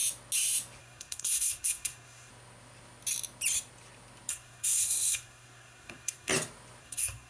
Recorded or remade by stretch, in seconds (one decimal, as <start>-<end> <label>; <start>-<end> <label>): 0.0-0.8 recorded; 0.8-2.3 remade; 2.3-4.3 recorded; 4.3-6.3 remade; 6.3-6.8 recorded; 6.8-7.3 remade